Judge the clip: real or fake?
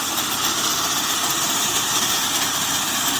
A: real